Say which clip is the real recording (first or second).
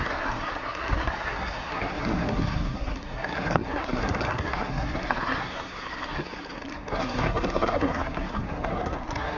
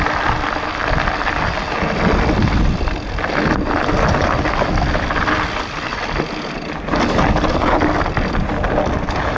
second